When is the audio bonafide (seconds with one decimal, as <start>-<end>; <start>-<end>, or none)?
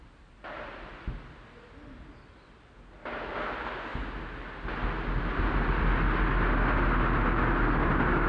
0.0-8.3